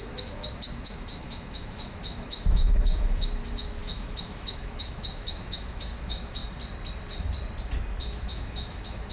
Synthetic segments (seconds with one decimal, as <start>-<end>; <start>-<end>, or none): 0.0-6.4; 8.0-9.1